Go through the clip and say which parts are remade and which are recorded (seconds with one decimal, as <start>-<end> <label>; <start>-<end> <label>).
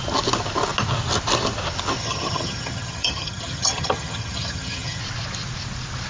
0.0-2.0 recorded; 2.0-5.0 remade; 5.0-6.1 recorded